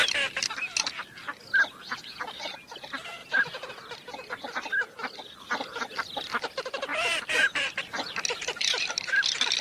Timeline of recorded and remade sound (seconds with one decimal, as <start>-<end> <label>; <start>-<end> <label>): 0.0-3.2 recorded; 3.2-3.7 remade; 3.7-6.9 recorded; 6.9-9.0 remade; 9.0-9.6 recorded